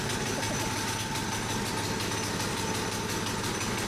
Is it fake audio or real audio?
real